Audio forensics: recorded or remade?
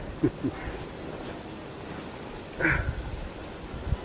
recorded